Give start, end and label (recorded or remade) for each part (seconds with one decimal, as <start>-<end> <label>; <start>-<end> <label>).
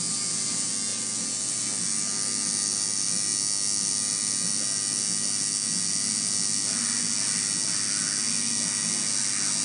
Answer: 0.0-9.6 recorded